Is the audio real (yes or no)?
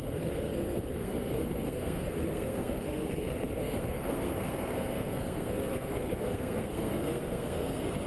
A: no